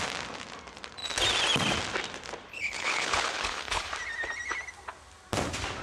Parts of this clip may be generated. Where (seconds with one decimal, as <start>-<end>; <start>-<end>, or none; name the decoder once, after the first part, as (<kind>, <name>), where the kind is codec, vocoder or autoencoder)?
2.5-3.9 (codec, HILCodec)